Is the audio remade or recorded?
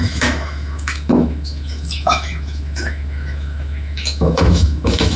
remade